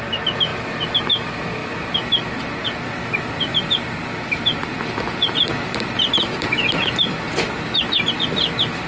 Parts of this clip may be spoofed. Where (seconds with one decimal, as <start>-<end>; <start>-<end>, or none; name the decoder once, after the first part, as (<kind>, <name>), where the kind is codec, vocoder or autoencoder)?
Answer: none